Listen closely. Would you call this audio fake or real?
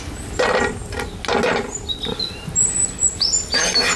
real